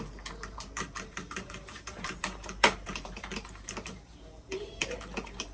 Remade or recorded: remade